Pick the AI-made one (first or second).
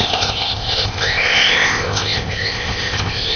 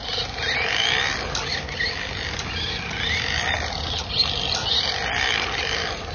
first